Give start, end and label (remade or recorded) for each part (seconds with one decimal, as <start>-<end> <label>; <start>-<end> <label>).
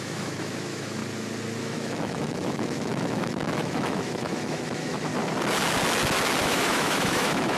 0.0-1.0 remade; 1.0-1.6 recorded; 1.6-5.1 remade; 5.1-6.4 recorded; 6.4-7.6 remade